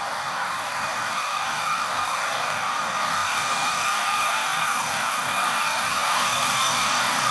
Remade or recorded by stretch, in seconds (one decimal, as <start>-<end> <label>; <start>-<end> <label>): 0.0-7.3 remade